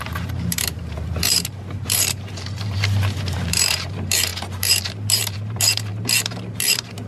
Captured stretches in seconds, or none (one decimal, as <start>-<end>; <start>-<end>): none